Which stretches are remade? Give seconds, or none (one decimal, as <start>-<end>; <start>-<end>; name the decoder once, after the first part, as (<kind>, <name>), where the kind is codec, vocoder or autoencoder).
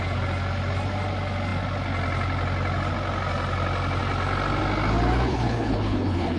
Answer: 5.3-6.4 (codec, HILCodec)